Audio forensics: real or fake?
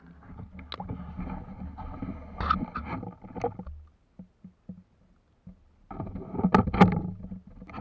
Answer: real